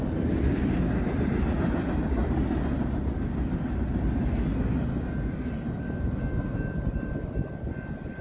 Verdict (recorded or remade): recorded